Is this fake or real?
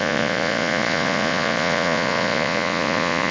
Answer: fake